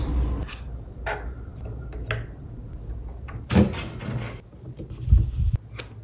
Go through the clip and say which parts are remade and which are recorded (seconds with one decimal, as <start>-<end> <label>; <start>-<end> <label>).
0.0-6.0 recorded